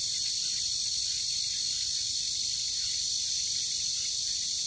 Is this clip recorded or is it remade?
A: recorded